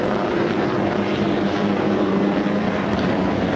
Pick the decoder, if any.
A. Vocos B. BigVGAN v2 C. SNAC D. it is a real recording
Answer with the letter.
B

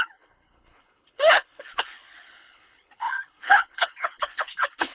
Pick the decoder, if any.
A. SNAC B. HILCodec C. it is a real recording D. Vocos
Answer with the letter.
B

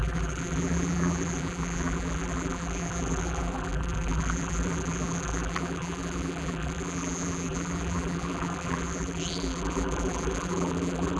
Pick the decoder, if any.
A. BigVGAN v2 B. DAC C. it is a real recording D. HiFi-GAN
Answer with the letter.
A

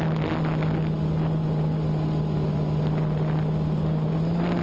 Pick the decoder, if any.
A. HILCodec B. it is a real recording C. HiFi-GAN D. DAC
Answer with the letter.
B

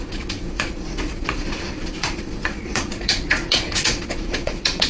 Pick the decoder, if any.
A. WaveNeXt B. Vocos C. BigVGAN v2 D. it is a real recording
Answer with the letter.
B